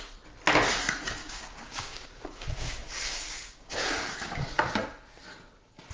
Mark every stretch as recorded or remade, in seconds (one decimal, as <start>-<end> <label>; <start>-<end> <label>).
0.0-1.2 recorded; 1.2-4.7 remade; 4.7-5.9 recorded